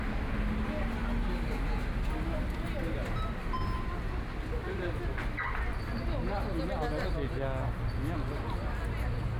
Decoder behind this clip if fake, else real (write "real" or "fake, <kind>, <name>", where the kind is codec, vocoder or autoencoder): real